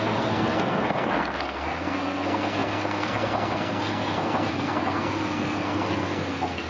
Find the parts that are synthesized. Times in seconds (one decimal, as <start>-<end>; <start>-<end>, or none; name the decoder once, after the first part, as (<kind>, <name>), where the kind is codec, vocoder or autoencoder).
0.0-6.7 (codec, SNAC)